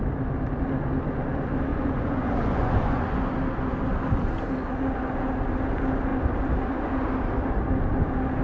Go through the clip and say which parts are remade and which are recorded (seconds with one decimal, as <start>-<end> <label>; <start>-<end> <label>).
0.0-1.7 recorded; 1.7-3.3 remade; 3.3-8.4 recorded